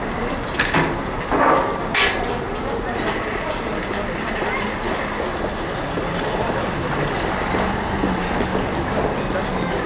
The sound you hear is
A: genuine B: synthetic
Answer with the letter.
A